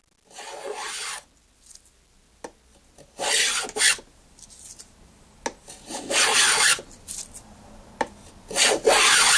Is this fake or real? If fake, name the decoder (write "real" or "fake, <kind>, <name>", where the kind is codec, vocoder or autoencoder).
real